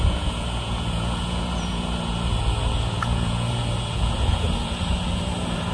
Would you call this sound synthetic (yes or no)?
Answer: yes